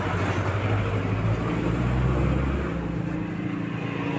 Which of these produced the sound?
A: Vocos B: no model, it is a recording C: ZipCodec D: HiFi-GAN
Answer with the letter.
B